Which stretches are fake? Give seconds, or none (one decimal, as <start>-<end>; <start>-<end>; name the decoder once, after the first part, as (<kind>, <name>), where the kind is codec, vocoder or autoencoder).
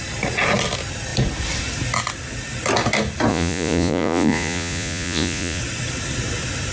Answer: 3.3-5.6 (vocoder, Vocos)